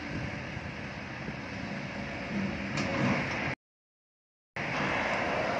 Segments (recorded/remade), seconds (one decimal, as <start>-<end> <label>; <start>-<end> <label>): 0.0-5.6 recorded